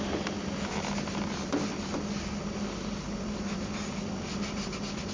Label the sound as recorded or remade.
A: recorded